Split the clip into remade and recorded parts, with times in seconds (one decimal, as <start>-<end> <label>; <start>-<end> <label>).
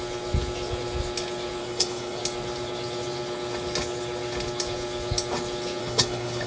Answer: 0.0-1.6 recorded; 1.6-2.2 remade; 2.2-5.8 recorded; 5.8-6.5 remade